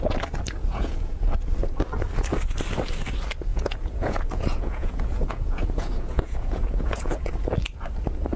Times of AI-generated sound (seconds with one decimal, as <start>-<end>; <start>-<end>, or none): 0.7-1.3; 3.5-7.3